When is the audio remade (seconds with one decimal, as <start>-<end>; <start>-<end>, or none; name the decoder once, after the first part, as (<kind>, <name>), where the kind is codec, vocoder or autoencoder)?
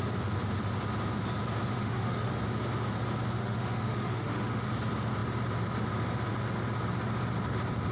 1.7-2.3 (autoencoder, DAC-VAE); 3.4-4.7